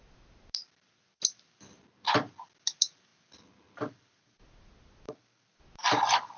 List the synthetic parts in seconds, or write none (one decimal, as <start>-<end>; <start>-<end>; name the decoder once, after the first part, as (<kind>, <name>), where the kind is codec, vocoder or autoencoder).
none